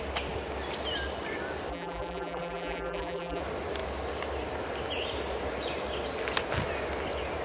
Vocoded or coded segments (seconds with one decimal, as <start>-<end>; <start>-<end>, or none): 1.7-3.4